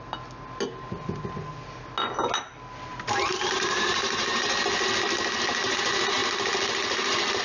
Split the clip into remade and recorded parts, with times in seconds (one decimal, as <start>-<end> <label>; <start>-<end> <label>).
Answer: 0.0-2.9 recorded; 2.9-4.6 remade; 4.6-7.4 recorded